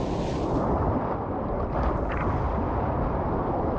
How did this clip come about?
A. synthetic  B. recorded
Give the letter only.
B